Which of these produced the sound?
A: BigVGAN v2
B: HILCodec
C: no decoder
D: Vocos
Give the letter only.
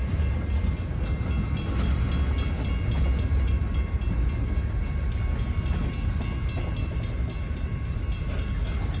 C